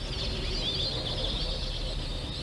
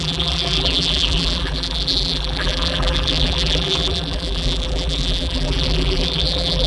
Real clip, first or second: first